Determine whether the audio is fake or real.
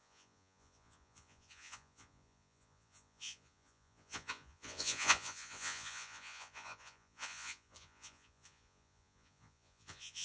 fake